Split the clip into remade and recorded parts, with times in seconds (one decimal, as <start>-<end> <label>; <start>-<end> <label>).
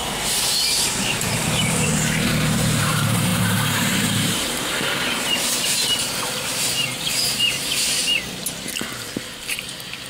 0.0-8.0 remade; 8.0-9.5 recorded; 9.5-10.1 remade